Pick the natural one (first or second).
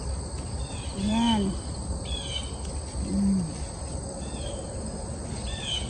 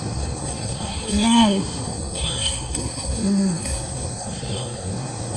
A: first